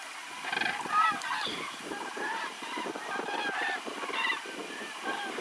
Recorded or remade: remade